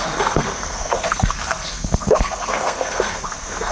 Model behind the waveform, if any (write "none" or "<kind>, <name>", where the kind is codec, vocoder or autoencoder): codec, SNAC